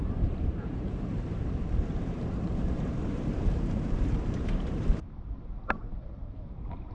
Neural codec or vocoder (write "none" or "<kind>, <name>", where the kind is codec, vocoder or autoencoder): vocoder, BigVGAN v2